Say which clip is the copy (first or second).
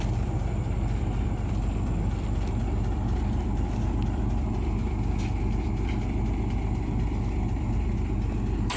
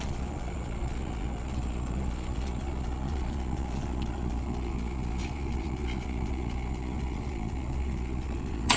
second